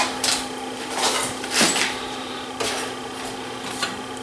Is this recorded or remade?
recorded